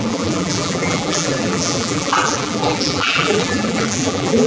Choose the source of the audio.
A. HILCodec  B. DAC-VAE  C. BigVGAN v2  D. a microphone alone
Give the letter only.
C